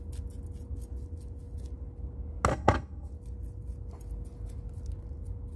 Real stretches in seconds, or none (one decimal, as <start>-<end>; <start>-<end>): 0.0-2.5; 3.1-5.6